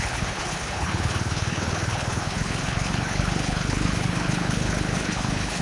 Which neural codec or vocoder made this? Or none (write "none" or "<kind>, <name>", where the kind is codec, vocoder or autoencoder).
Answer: codec, HILCodec